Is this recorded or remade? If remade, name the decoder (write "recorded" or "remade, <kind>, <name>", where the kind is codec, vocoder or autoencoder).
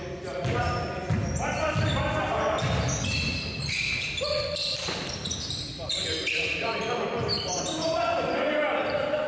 recorded